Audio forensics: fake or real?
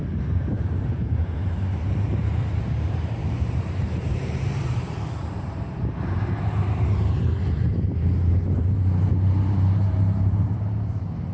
fake